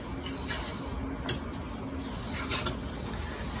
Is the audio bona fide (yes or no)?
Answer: yes